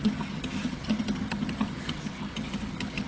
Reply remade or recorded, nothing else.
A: remade